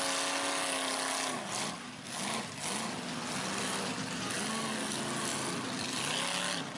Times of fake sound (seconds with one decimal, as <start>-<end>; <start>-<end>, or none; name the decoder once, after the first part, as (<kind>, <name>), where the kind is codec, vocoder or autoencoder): none